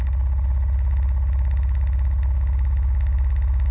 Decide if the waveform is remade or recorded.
recorded